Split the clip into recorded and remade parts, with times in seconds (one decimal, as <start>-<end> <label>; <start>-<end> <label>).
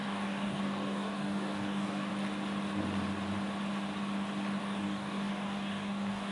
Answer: 0.0-2.1 remade; 2.1-4.6 recorded; 4.6-6.3 remade